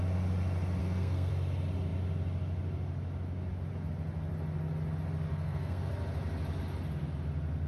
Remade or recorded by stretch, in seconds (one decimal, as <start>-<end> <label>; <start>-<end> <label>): 0.0-0.8 recorded; 0.8-1.3 remade; 1.3-5.3 recorded; 5.3-5.9 remade; 5.9-7.7 recorded